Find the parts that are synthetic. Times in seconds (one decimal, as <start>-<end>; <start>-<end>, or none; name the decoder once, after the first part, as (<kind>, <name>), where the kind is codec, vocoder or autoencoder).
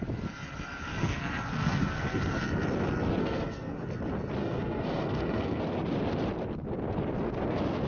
1.0-2.4 (codec, SNAC); 3.2-3.8; 4.4-5.6